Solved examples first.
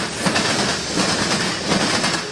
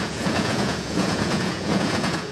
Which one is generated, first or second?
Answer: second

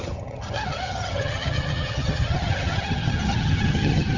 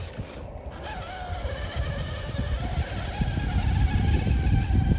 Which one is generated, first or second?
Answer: first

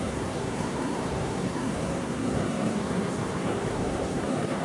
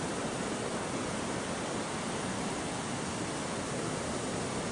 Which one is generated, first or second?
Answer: first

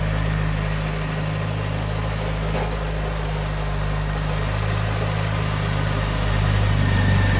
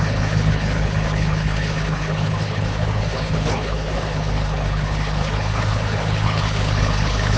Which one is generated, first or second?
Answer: second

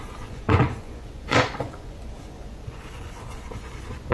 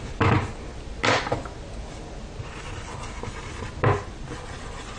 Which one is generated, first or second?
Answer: first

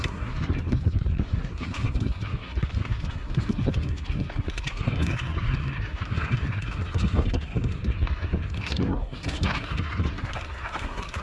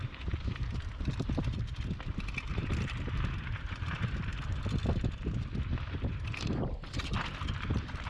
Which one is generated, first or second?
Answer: first